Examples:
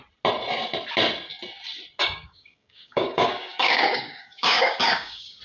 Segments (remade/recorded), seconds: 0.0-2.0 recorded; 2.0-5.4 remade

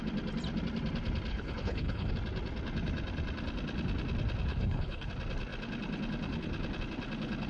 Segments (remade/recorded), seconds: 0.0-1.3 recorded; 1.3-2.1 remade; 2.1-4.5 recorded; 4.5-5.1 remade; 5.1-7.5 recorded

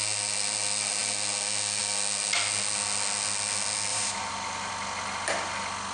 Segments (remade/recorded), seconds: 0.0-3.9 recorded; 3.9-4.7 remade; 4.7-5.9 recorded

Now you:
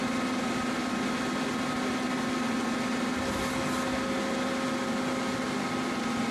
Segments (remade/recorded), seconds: 0.0-6.3 recorded

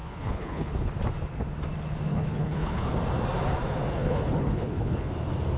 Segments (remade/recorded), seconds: 0.0-0.9 remade; 0.9-2.1 recorded; 2.1-2.9 remade; 2.9-3.9 recorded; 3.9-5.1 remade; 5.1-5.6 recorded

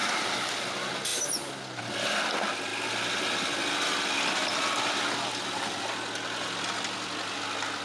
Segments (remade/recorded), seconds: 0.0-0.7 remade; 0.7-7.8 recorded